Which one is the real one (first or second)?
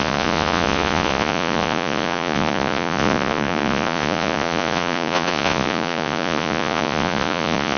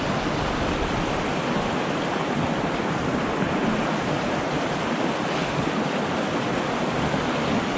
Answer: second